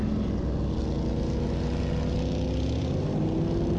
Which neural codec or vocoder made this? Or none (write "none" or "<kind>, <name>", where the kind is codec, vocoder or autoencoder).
none